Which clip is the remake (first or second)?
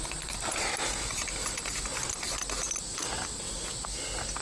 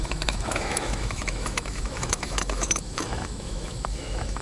second